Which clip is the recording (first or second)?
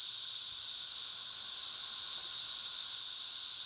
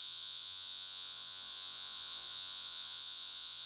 first